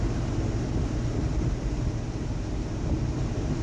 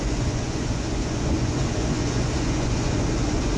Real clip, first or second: first